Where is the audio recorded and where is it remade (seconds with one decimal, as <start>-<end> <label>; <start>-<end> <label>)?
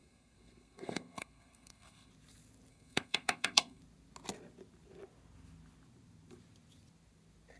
0.0-2.1 remade; 2.1-2.7 recorded; 2.7-3.8 remade; 3.8-7.6 recorded